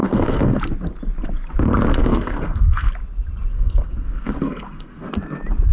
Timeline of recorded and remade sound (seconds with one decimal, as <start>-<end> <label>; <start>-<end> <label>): 0.0-0.6 remade; 0.6-2.0 recorded; 2.0-2.9 remade; 2.9-3.5 recorded; 3.5-5.1 remade; 5.1-5.7 recorded